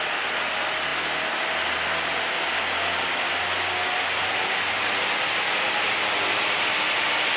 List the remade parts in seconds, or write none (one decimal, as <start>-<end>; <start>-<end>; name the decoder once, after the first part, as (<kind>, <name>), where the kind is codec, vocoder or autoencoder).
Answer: none